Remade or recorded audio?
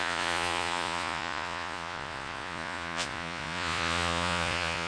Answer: remade